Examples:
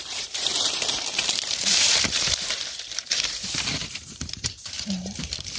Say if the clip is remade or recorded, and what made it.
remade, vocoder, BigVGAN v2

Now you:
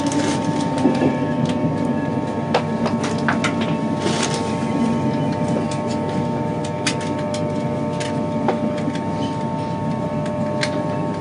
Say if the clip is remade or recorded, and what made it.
recorded